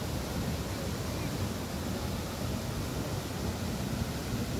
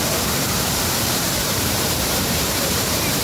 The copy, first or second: second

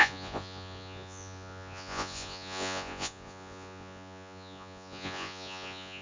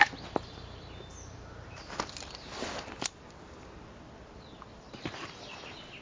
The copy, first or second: first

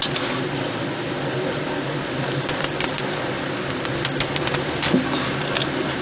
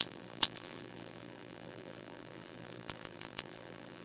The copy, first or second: second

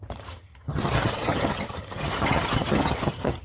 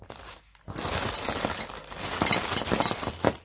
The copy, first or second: first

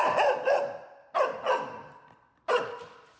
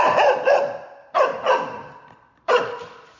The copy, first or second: second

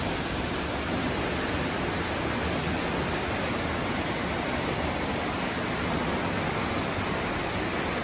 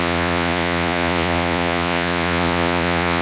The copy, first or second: second